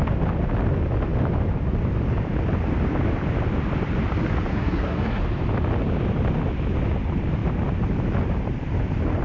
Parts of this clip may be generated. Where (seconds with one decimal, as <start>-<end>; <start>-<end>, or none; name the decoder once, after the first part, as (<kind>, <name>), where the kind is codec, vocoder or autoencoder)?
4.5-5.2 (codec, SNAC)